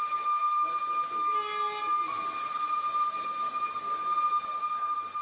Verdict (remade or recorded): recorded